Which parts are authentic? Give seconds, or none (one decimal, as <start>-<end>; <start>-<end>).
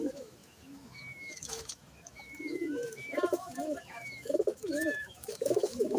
none